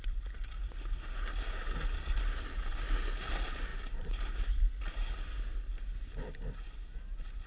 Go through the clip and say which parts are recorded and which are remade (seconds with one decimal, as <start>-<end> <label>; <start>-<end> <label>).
0.0-3.7 recorded; 3.7-4.6 remade; 4.6-7.5 recorded